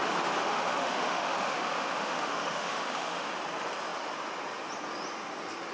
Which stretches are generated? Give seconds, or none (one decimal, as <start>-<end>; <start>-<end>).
0.4-3.3